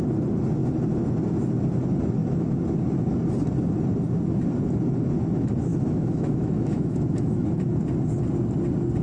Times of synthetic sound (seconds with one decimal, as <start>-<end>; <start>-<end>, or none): 5.7-7.7